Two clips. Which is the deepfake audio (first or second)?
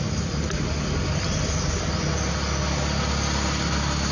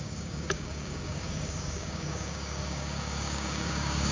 second